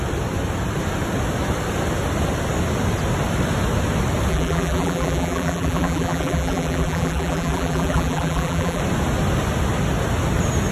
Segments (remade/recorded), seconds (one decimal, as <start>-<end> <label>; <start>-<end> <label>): 0.0-4.3 recorded; 4.3-8.8 remade; 8.8-10.7 recorded